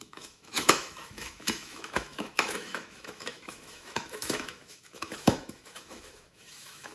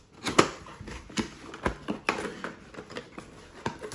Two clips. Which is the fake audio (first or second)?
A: first